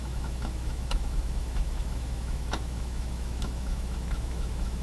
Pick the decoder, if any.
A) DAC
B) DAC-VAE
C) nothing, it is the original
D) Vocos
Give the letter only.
B